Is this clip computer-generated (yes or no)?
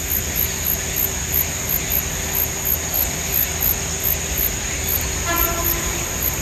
no